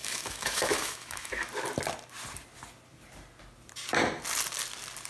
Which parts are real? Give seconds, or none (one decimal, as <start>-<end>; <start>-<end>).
1.5-5.1

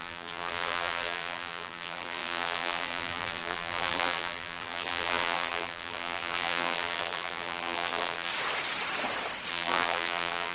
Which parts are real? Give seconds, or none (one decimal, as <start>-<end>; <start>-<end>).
8.3-9.5

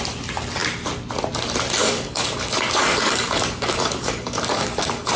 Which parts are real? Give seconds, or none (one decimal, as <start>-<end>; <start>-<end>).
0.0-1.8

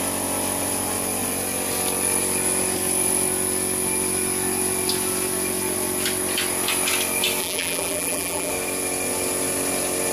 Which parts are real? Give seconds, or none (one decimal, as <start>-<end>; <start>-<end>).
0.0-7.4; 8.5-10.1

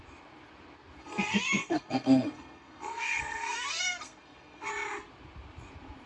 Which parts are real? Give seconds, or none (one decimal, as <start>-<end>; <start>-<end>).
0.0-1.0; 4.7-6.1